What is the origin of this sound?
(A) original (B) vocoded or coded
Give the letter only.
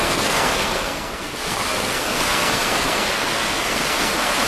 B